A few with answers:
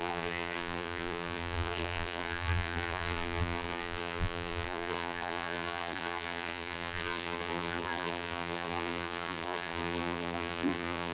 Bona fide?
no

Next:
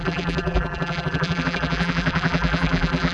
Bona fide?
no